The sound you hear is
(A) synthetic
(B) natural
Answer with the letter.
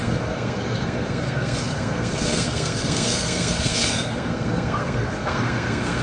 A